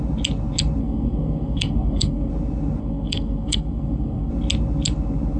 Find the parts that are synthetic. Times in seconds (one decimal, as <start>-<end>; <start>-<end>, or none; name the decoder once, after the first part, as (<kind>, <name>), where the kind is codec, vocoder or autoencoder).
0.8-2.3 (codec, SNAC); 2.8-4.3